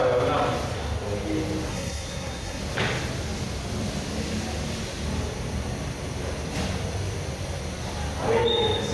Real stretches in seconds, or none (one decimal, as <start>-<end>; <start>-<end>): 0.0-1.7; 2.6-8.9